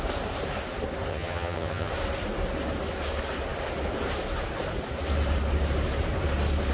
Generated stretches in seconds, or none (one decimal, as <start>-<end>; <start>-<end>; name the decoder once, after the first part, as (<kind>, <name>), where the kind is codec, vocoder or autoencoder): 1.1-1.9 (vocoder, HiFi-GAN)